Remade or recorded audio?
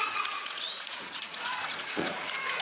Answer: remade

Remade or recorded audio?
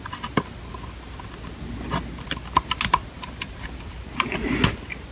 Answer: recorded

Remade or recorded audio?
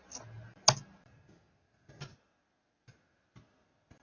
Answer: recorded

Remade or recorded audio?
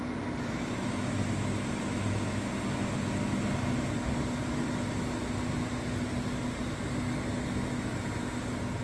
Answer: recorded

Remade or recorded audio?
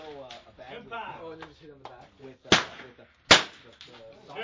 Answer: recorded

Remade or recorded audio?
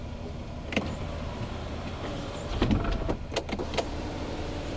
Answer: remade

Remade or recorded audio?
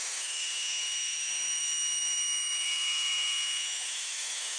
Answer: remade